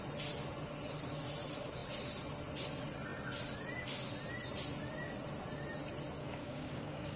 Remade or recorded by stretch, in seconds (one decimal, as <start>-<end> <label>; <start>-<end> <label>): 0.0-6.2 recorded; 6.2-7.2 remade